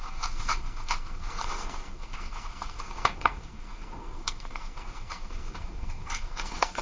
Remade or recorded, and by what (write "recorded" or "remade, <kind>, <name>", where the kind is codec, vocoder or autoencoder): remade, codec, SNAC